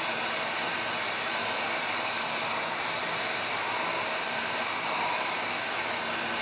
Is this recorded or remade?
recorded